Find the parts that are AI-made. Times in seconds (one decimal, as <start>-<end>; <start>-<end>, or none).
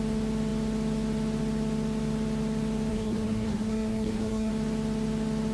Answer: 2.9-4.5